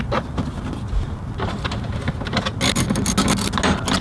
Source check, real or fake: real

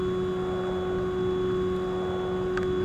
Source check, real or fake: real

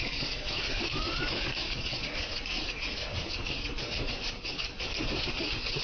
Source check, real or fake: fake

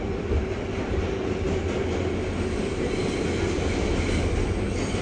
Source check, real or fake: real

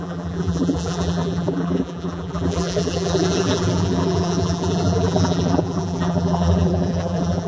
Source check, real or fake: fake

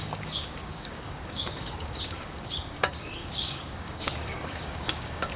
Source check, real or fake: fake